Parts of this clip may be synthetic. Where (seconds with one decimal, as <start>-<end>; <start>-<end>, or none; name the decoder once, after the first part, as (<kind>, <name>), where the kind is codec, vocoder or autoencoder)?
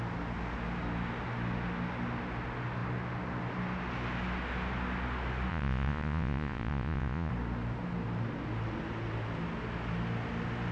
5.5-7.3 (vocoder, Vocos)